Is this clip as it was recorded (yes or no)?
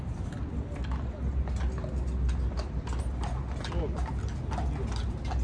yes